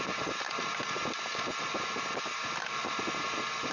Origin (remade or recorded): recorded